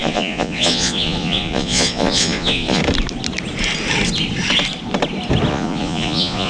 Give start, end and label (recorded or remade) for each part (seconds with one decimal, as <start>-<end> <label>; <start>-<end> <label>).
0.0-2.8 remade; 2.8-5.5 recorded; 5.5-6.5 remade